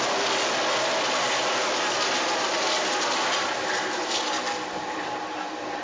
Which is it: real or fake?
real